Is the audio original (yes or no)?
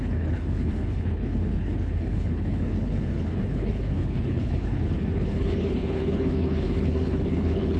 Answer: no